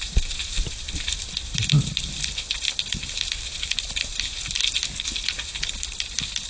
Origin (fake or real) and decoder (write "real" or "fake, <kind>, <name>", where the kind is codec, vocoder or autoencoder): real